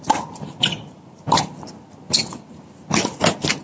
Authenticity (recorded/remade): recorded